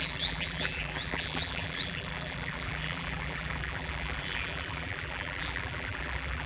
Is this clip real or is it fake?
fake